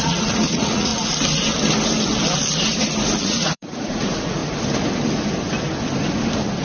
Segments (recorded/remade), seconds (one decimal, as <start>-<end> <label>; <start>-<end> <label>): 0.0-0.9 remade; 0.9-3.2 recorded; 3.2-4.4 remade; 4.4-6.6 recorded